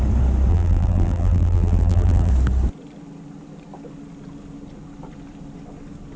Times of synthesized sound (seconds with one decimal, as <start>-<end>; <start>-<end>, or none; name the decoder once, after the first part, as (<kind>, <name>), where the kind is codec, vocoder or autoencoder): 0.5-2.3 (vocoder, BigVGAN v2)